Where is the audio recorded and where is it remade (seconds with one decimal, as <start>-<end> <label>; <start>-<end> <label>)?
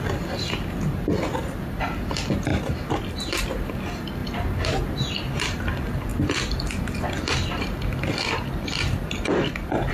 0.0-2.5 recorded; 2.5-3.4 remade; 3.4-6.1 recorded; 6.1-9.9 remade